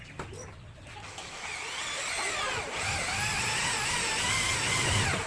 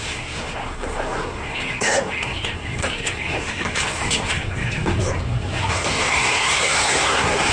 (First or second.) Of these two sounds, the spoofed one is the second